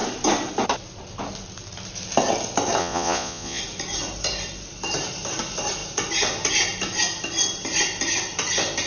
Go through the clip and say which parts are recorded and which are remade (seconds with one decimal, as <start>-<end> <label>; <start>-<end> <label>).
0.0-2.8 recorded; 2.8-3.6 remade; 3.6-8.9 recorded